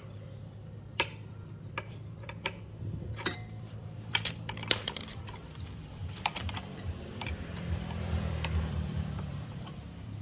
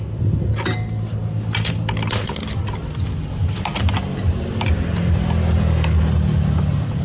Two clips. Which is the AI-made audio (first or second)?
first